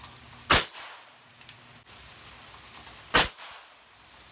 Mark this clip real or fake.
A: real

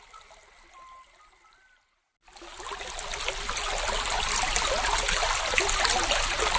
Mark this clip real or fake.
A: real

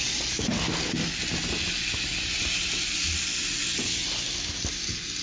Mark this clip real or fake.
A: real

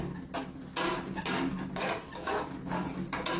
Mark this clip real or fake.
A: real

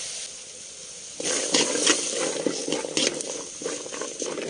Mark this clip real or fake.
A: real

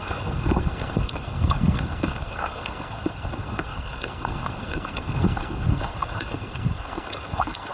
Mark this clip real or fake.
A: fake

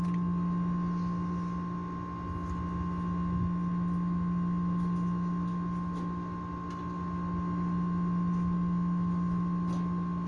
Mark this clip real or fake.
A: real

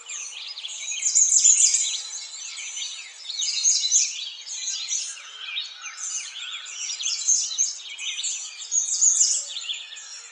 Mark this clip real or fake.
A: fake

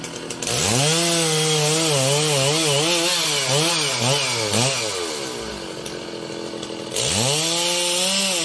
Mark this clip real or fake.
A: real